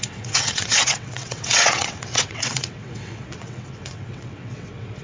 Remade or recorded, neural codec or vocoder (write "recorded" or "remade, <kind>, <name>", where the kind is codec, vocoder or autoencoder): remade, vocoder, WaveNeXt